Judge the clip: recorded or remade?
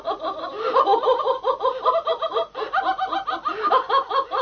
recorded